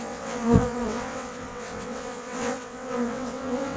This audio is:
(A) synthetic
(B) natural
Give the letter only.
A